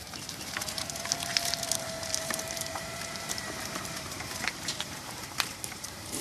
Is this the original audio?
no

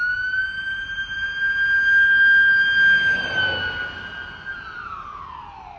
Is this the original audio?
yes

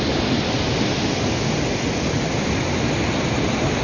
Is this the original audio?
yes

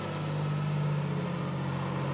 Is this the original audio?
yes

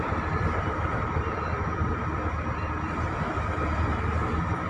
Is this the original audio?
no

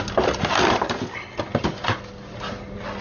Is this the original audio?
yes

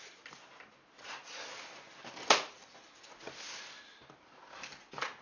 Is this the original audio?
yes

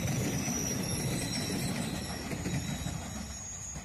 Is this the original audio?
yes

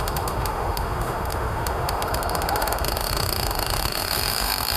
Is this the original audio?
no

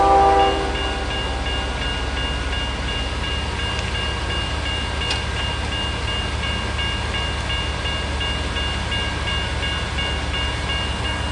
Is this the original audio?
yes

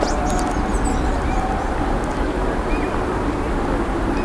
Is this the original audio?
yes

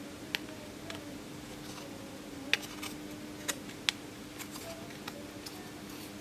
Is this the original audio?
yes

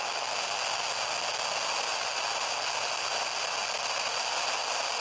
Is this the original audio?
yes